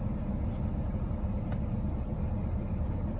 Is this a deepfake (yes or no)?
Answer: no